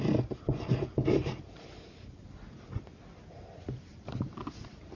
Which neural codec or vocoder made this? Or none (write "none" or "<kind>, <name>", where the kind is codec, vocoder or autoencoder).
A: none